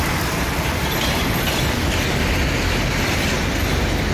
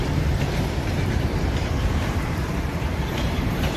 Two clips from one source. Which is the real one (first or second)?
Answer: first